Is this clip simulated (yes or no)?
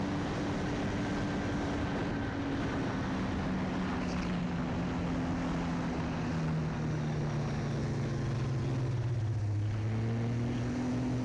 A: no